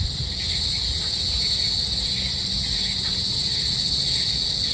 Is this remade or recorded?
recorded